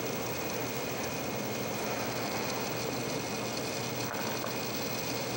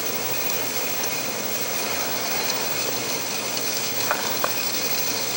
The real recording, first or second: first